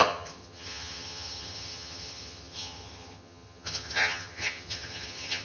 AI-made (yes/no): yes